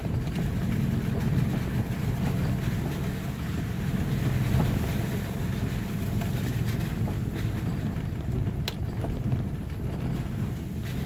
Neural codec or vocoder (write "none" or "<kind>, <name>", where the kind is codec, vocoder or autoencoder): none